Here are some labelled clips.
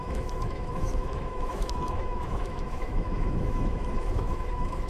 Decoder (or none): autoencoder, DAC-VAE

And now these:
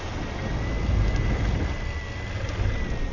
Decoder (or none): none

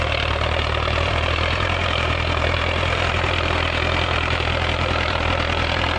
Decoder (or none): vocoder, BigVGAN v2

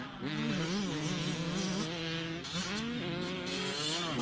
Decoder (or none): none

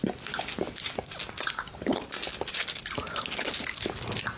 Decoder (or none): none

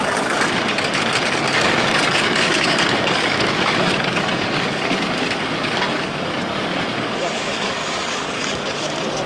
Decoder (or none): codec, DAC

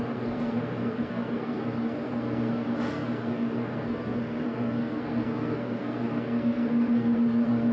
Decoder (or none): codec, SNAC